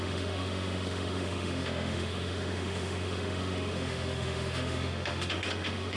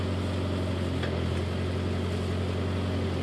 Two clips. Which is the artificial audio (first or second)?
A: first